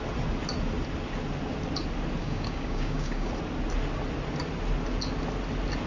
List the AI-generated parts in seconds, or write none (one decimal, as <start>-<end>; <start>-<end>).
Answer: 2.2-3.3